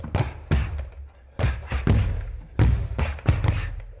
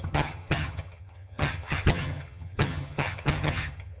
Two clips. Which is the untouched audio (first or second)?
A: first